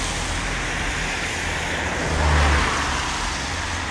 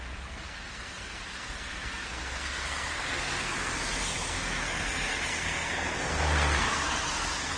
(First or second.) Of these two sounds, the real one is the first